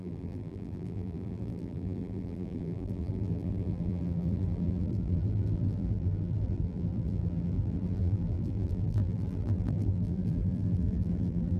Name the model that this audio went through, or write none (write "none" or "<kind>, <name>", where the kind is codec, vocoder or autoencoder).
vocoder, BigVGAN v2